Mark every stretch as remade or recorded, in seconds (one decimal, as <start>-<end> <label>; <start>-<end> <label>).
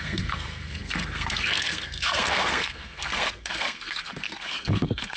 0.0-5.2 remade